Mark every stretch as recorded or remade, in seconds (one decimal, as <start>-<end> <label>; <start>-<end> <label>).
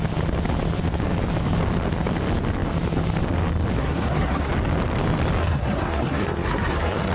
0.0-3.8 recorded; 3.8-4.5 remade; 4.5-5.4 recorded; 5.4-7.1 remade